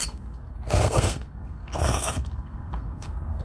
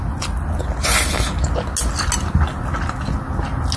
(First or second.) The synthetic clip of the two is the first